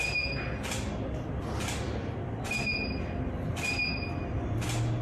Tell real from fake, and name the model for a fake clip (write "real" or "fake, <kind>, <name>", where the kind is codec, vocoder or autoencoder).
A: real